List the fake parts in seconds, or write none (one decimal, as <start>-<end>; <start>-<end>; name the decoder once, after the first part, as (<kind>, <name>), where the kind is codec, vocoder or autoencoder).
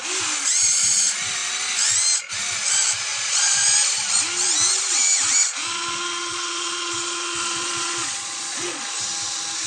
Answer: 3.1-3.6 (vocoder, Vocos); 5.6-8.8